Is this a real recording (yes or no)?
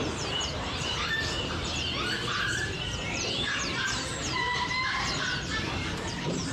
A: no